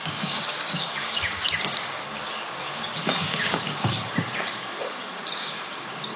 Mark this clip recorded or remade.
remade